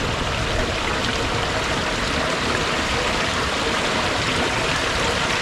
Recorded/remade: recorded